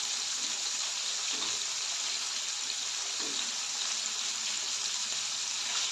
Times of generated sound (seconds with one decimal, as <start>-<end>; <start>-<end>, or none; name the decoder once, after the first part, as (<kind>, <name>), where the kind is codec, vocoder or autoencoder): none